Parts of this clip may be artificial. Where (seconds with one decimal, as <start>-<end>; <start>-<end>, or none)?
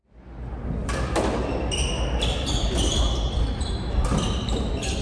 none